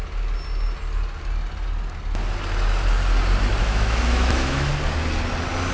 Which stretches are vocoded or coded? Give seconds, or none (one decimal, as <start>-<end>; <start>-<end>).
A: 3.6-4.7